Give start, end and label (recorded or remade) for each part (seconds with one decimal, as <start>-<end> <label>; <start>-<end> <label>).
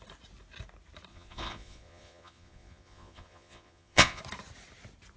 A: 0.0-1.1 recorded; 1.1-4.2 remade; 4.2-5.2 recorded